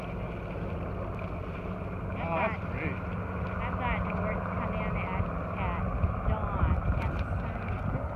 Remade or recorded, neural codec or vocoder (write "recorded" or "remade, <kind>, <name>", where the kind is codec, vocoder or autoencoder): recorded